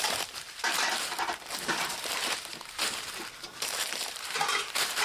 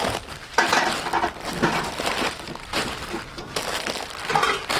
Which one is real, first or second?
second